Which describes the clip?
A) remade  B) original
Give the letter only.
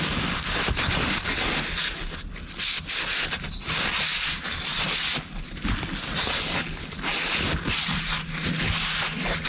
B